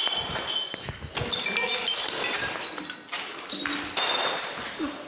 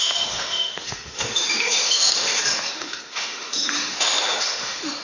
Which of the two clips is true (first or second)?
first